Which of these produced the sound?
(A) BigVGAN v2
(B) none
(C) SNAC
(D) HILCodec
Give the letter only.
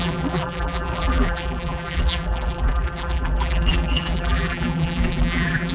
A